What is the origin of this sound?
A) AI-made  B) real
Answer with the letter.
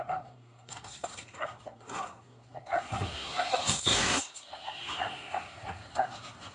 A